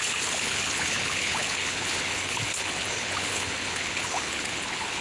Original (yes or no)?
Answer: no